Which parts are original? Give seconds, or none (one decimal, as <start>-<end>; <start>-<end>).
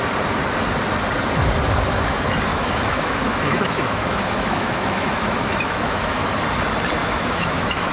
0.0-2.5; 6.2-7.0